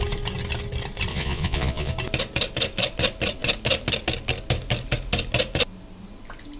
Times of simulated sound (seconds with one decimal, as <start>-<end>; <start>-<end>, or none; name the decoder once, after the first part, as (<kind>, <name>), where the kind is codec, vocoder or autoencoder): 1.1-1.9 (vocoder, Vocos)